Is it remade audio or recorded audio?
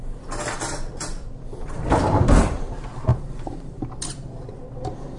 recorded